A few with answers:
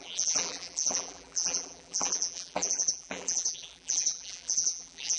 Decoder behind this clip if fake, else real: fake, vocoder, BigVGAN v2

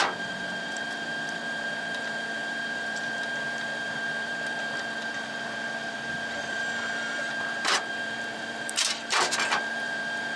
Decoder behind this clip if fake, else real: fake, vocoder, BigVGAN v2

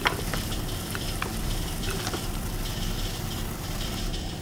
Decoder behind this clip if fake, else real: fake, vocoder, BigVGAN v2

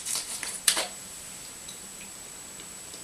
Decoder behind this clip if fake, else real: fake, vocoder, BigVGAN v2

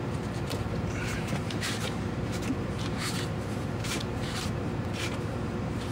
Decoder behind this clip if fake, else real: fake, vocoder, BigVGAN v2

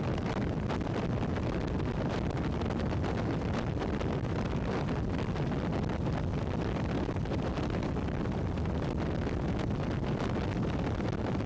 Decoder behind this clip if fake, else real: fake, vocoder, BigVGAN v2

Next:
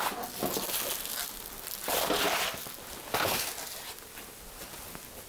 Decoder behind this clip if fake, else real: real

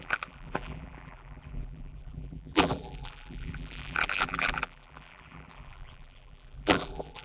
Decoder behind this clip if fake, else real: fake, vocoder, BigVGAN v2